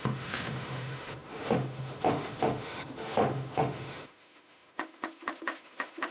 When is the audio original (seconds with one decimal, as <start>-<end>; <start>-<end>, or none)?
none